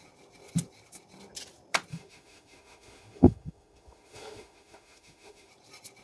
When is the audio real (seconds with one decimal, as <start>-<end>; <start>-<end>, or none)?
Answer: 0.0-1.9; 5.5-6.0